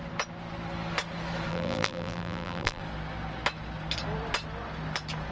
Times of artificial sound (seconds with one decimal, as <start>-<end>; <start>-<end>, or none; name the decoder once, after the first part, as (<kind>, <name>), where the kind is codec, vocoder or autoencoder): 1.5-2.8 (vocoder, BigVGAN v2)